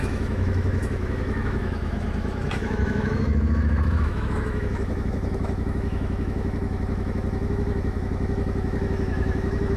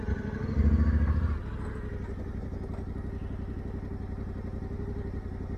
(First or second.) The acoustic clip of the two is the second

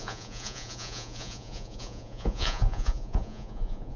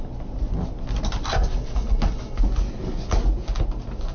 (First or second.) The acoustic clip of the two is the second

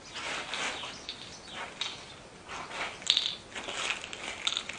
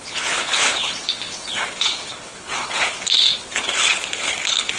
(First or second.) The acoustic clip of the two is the first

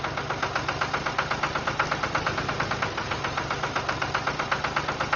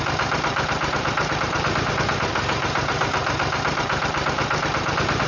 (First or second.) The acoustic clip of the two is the first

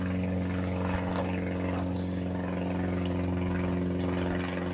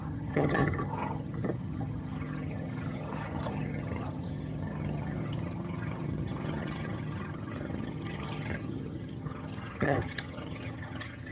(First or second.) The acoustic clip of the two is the first